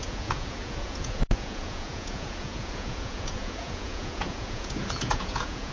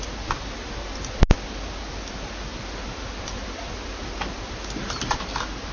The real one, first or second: second